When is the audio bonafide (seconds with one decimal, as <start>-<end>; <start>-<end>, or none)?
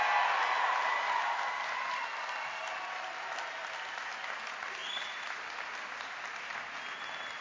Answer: 0.0-4.8; 5.4-7.4